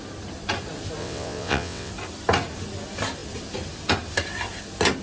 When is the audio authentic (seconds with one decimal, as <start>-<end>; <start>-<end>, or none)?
0.0-1.0; 1.9-5.0